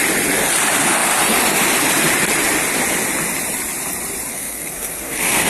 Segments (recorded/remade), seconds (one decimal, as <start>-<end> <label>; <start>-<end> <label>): 0.0-4.3 recorded; 4.3-5.5 remade